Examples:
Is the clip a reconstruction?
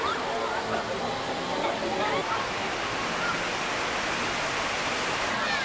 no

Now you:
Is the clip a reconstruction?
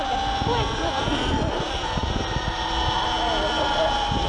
no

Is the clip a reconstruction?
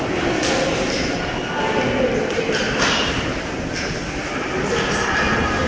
no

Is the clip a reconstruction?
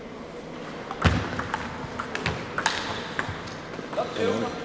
no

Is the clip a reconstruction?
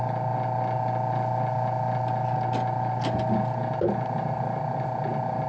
no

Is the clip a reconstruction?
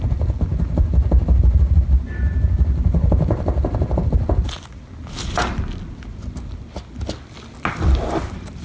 no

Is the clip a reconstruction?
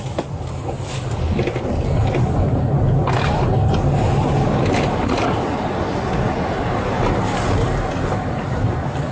no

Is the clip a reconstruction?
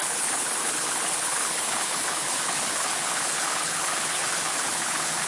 yes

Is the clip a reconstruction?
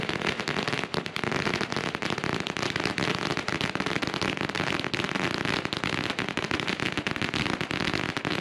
no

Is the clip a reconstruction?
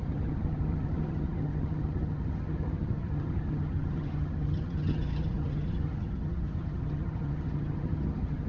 yes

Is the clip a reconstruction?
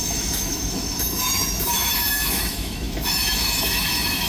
yes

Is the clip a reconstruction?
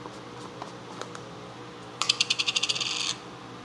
no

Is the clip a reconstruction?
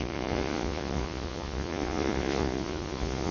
yes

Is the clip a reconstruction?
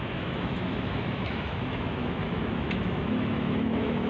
yes